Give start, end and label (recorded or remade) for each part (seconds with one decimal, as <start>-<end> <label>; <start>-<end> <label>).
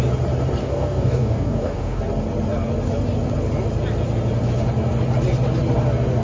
0.0-0.6 recorded; 0.6-2.0 remade; 2.0-6.2 recorded